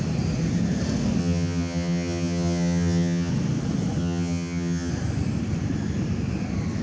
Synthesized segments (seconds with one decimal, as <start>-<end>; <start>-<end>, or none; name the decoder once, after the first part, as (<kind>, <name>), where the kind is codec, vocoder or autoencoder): 1.2-3.3 (vocoder, HiFi-GAN); 4.0-4.9